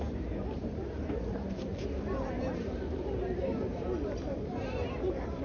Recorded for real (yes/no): no